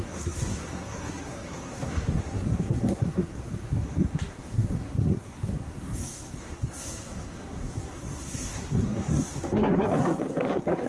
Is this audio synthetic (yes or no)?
yes